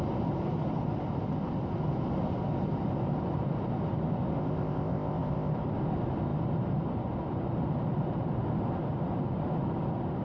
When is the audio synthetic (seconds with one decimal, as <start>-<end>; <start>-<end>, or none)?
4.4-5.5